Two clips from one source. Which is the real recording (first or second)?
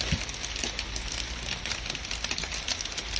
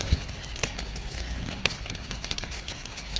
first